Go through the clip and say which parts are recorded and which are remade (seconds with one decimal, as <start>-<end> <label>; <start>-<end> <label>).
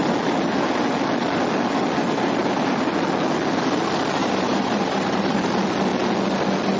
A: 0.0-4.2 recorded; 4.2-5.4 remade; 5.4-6.8 recorded